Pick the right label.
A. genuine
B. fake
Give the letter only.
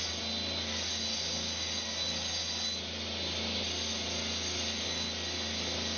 A